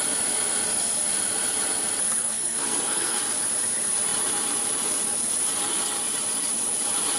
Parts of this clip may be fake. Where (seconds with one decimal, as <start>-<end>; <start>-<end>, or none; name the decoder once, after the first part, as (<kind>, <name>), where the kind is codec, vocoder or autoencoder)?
2.2-3.2 (codec, SNAC)